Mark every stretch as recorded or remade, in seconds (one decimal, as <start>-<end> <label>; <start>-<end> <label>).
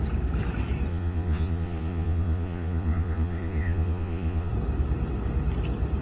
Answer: 0.0-0.9 recorded; 0.9-4.5 remade; 4.5-6.0 recorded